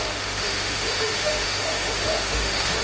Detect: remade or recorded remade